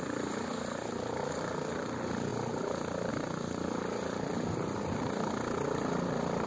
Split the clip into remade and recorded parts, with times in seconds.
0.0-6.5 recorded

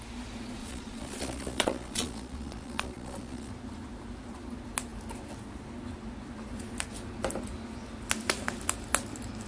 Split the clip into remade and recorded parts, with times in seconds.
0.0-0.6 recorded; 0.6-3.5 remade; 3.5-9.5 recorded

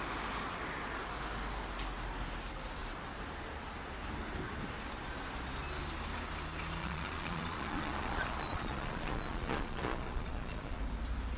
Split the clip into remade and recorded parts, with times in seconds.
0.0-6.8 recorded; 6.8-10.8 remade; 10.8-11.4 recorded

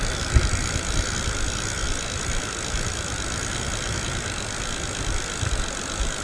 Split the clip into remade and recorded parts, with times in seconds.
0.0-6.2 recorded

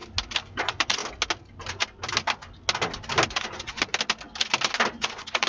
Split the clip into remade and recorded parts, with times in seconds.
0.0-0.6 recorded; 0.6-1.0 remade; 1.0-3.3 recorded; 3.3-3.9 remade; 3.9-4.9 recorded; 4.9-5.5 remade

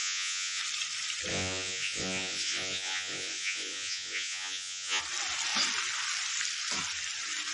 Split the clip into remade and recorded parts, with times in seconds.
0.0-0.6 remade; 0.6-1.3 recorded; 1.3-5.0 remade; 5.0-7.5 recorded